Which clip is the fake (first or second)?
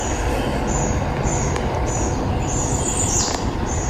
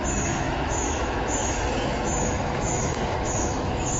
second